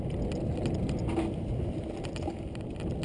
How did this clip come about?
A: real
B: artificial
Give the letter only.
A